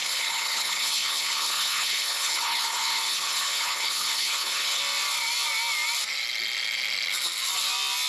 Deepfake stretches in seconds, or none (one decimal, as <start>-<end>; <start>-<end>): 0.0-4.8